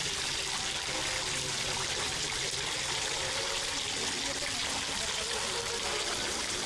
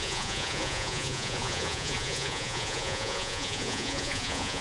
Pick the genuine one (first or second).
first